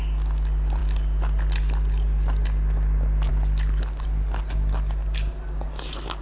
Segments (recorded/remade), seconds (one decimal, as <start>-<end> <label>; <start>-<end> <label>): 0.0-6.2 recorded